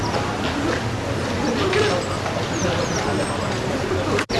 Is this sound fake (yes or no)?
no